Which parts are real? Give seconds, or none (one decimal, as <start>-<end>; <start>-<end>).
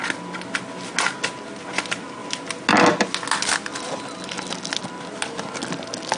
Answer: 0.0-6.2